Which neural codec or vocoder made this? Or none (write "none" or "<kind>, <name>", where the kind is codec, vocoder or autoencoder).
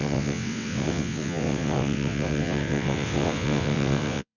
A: vocoder, WaveNeXt